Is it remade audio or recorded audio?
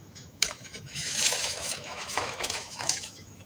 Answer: remade